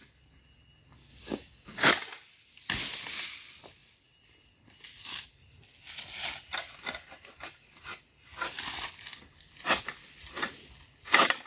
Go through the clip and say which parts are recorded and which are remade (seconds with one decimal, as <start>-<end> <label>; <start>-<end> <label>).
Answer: 0.0-1.1 recorded; 1.1-1.9 remade; 1.9-11.5 recorded